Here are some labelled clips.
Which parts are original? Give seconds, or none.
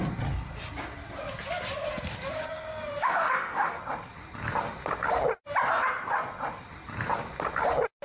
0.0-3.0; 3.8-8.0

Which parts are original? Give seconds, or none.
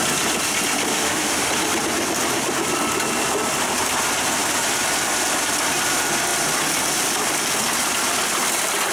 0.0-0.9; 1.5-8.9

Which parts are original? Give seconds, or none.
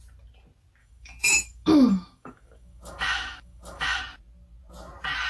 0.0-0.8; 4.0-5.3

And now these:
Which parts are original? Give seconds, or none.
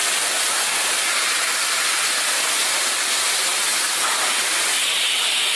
0.0-5.6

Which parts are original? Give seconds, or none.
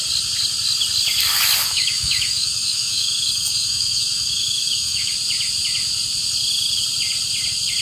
0.0-1.7; 5.1-7.8